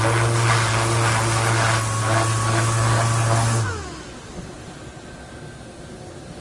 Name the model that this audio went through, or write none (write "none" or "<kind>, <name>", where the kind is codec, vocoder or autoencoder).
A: none